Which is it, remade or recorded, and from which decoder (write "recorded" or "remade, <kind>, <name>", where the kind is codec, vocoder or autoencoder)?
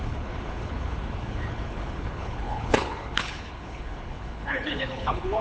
remade, codec, HILCodec